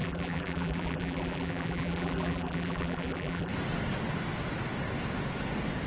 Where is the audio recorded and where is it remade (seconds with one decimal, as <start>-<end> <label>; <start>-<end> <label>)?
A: 0.0-3.5 remade; 3.5-5.9 recorded